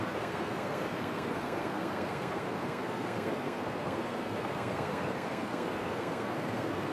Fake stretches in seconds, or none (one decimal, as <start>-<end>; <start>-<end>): 0.0-6.9